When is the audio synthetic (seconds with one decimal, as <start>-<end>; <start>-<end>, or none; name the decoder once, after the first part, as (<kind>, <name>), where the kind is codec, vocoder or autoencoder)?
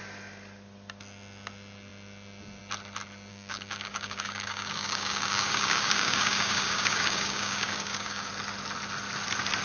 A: 3.3-8.3 (codec, DAC)